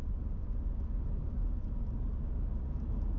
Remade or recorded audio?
recorded